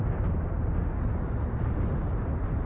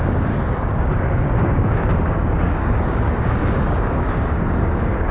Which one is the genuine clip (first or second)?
first